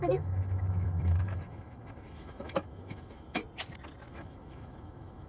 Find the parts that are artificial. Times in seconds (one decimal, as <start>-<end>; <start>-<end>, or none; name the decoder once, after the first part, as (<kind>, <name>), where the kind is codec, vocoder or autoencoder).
0.0-3.4 (autoencoder, DAC-VAE); 4.1-5.3